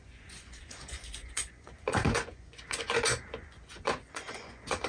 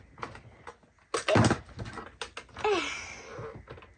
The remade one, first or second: first